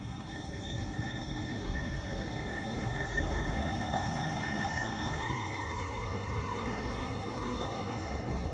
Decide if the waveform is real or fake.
fake